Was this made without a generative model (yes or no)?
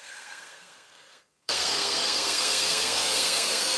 no